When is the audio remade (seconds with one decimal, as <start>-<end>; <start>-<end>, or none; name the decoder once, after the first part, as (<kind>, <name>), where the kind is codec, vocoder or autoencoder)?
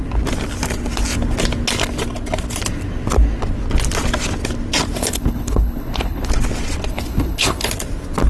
5.0-6.3 (codec, HILCodec); 6.9-7.7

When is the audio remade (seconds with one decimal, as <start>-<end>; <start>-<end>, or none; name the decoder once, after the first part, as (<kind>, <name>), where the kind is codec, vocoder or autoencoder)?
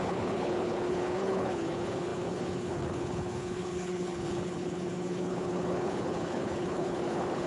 0.0-7.5 (codec, HILCodec)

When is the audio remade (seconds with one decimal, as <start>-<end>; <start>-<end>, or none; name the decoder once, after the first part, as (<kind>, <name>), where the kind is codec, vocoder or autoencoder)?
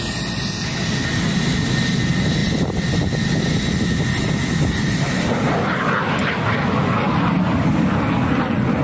none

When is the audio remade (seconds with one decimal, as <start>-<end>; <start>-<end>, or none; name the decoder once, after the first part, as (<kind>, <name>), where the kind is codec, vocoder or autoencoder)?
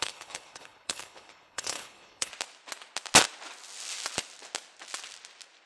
0.0-2.3 (codec, HILCodec)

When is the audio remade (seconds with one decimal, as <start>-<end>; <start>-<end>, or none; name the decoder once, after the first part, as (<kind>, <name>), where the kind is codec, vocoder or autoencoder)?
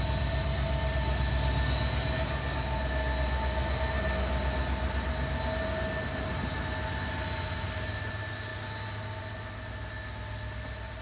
none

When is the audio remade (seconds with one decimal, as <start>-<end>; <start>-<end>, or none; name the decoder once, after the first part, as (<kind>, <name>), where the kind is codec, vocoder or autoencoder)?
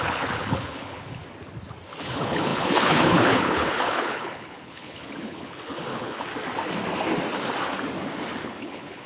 0.0-1.2 (codec, HILCodec); 2.0-6.3; 8.4-9.1